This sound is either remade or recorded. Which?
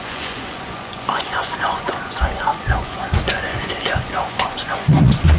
remade